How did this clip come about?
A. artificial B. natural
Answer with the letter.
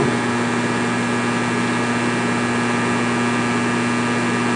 B